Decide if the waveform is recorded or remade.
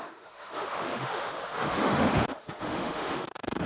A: remade